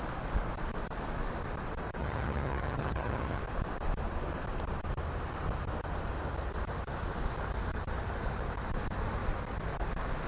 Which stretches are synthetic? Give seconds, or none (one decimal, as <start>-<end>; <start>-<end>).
2.0-3.4